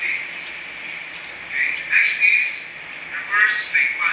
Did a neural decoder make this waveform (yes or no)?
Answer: no